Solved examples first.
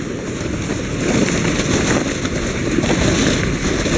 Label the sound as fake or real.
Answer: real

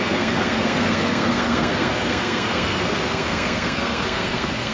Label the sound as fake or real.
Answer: fake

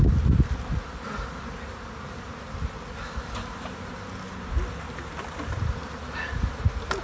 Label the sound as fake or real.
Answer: real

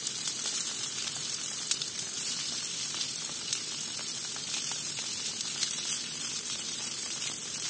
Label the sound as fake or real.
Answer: real